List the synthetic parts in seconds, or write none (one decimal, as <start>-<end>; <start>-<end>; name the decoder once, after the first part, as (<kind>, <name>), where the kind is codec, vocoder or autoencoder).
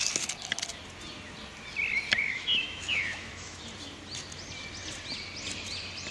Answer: 2.2-3.6 (autoencoder, DAC-VAE)